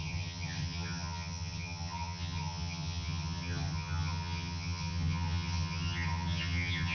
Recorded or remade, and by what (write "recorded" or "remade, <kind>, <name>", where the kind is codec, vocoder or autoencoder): remade, vocoder, HiFi-GAN